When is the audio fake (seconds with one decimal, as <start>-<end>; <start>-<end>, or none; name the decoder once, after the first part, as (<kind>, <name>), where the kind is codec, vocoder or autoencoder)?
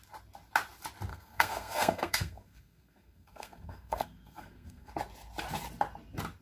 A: 1.1-4.9 (codec, SNAC)